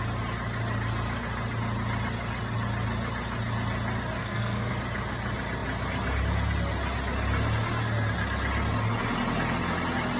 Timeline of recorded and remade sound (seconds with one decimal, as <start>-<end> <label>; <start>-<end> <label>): 0.0-4.2 recorded; 4.2-4.7 remade; 4.7-10.2 recorded